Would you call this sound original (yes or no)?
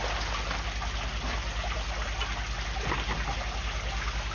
yes